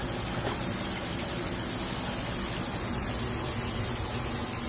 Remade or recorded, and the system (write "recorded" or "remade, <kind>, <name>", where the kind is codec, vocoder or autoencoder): recorded